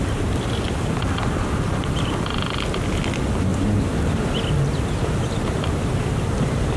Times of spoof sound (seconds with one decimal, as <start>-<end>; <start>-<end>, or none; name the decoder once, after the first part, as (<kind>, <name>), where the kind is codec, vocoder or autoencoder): none